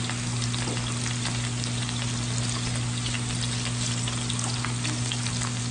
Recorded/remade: recorded